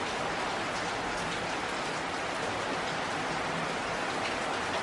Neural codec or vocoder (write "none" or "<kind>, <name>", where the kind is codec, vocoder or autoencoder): none